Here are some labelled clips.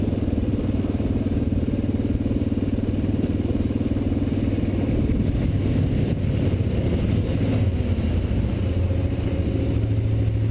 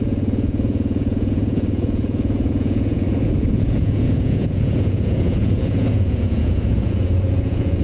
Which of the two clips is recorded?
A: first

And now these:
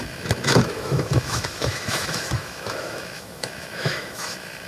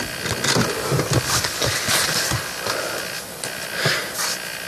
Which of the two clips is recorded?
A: second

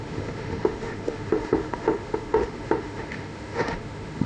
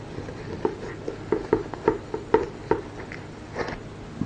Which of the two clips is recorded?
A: second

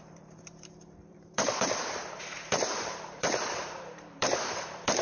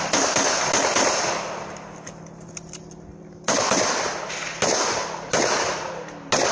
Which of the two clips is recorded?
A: second